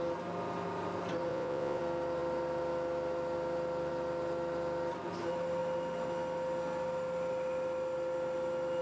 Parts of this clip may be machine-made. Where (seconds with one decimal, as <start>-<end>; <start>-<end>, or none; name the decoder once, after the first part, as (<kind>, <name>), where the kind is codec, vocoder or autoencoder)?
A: 1.3-1.8 (vocoder, Vocos)